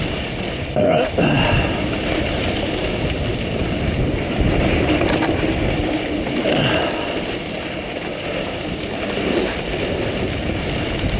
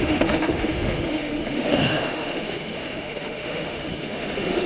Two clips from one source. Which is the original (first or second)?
first